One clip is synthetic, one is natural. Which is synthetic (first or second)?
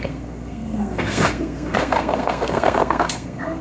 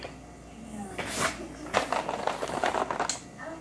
first